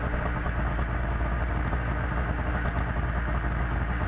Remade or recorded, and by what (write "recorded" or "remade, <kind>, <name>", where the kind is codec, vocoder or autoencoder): recorded